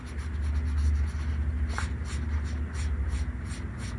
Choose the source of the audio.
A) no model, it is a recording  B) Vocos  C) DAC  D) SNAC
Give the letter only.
A